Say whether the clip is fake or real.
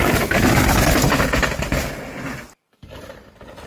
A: real